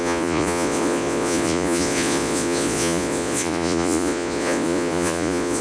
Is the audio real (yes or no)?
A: no